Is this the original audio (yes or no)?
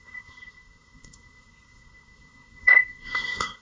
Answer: no